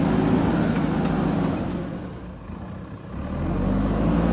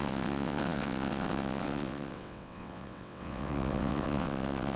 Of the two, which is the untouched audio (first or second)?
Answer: first